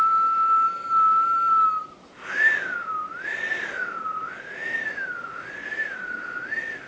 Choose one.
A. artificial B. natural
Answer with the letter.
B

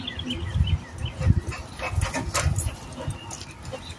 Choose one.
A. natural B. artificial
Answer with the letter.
A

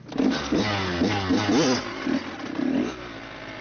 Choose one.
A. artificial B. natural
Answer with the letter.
B